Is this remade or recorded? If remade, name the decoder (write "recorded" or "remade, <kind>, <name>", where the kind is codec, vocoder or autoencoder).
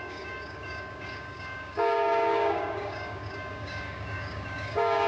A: remade, codec, DAC